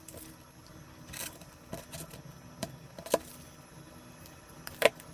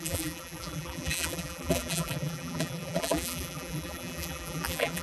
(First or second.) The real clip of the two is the first